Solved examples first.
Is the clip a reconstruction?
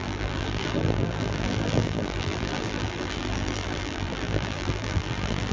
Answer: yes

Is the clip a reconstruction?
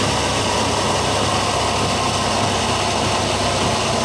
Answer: no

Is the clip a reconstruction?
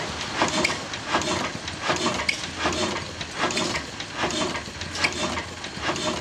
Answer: no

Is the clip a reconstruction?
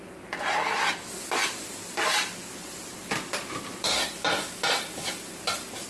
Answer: no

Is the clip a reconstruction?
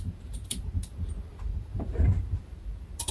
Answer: yes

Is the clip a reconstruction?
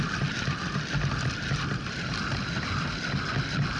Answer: no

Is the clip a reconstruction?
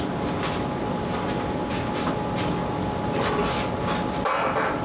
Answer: no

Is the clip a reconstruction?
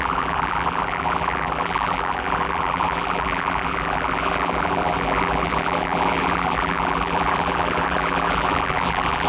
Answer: yes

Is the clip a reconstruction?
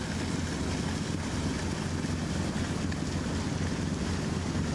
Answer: no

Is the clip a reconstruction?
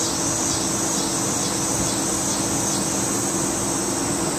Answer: no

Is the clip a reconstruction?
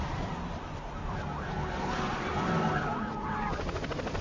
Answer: yes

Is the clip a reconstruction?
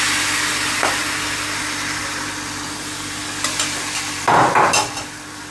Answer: no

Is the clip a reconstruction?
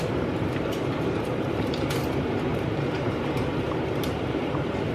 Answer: yes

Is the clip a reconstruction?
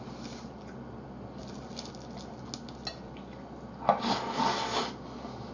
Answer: no